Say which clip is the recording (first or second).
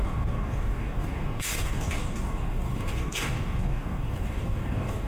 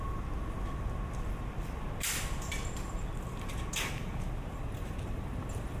second